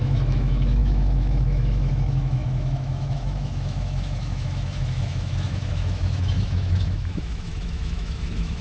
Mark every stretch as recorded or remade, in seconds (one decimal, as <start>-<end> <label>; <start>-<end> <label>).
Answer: 0.0-8.6 remade